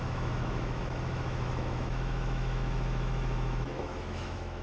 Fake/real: fake